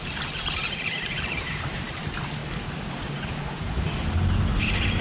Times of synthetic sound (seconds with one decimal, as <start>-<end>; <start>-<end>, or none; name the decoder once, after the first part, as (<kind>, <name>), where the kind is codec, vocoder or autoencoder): 0.0-2.4 (vocoder, BigVGAN v2); 4.6-5.0